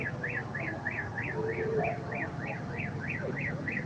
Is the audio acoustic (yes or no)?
yes